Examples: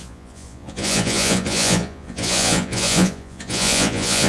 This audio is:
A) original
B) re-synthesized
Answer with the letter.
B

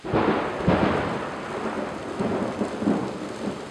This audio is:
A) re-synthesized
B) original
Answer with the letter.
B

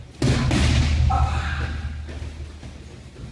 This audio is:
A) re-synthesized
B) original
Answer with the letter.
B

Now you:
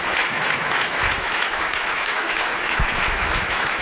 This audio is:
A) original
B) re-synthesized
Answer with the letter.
B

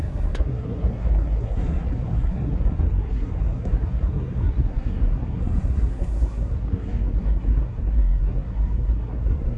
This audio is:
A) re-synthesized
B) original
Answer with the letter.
A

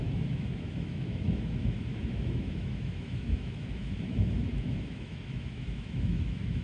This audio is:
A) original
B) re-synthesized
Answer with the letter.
B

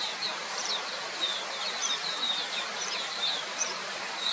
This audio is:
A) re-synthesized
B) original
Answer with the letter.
A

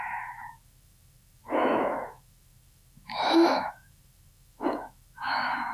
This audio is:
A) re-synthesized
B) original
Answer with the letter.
A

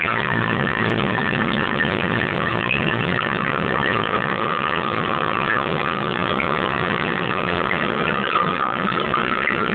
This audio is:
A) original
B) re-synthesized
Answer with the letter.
B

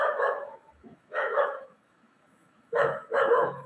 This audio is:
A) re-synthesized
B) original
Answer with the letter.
A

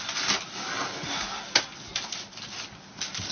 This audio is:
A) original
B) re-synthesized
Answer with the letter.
A